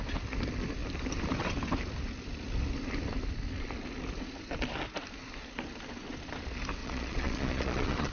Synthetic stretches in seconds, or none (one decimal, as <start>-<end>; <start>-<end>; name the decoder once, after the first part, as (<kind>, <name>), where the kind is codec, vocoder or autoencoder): 6.8-8.1 (vocoder, Vocos)